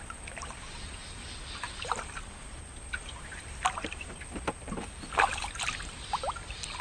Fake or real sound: real